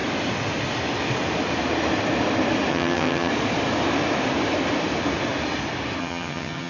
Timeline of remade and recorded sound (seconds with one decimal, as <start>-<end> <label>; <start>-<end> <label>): 0.0-2.7 recorded; 2.7-3.3 remade; 3.3-6.0 recorded; 6.0-6.7 remade